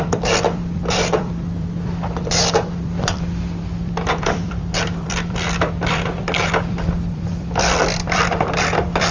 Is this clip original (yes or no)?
no